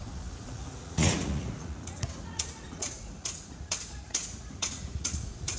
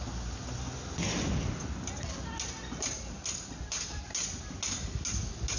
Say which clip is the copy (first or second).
first